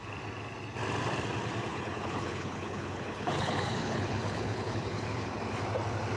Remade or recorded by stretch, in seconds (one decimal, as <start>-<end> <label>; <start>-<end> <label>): 0.0-1.7 recorded; 1.7-5.4 remade; 5.4-6.2 recorded